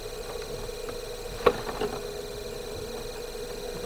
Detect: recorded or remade recorded